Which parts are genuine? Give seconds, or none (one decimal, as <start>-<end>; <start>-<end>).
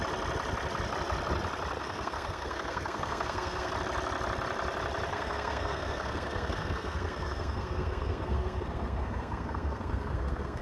0.0-1.8; 3.7-5.1